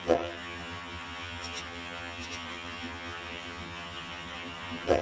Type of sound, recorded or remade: remade